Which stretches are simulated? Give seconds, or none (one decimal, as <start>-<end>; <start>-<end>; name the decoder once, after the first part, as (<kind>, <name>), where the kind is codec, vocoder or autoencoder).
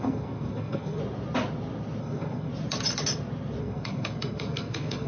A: 0.0-1.0 (codec, SNAC); 2.0-2.5; 3.6-5.1